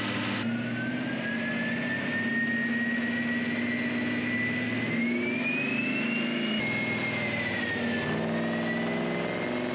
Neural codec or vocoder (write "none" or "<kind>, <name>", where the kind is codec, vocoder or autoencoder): none